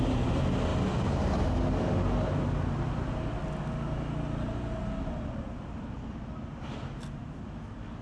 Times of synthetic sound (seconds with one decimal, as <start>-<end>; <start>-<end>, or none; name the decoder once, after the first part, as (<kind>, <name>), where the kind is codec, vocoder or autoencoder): none